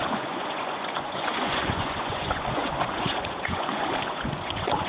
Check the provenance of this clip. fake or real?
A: fake